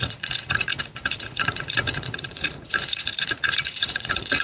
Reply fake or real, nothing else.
fake